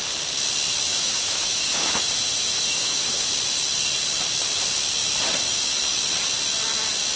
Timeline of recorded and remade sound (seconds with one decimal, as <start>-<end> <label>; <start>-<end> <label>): 0.0-0.9 recorded; 0.9-3.3 remade; 3.3-7.2 recorded